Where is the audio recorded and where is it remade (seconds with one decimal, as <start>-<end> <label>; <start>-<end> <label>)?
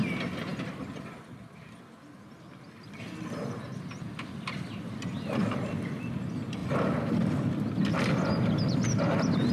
0.0-6.6 recorded; 6.6-9.5 remade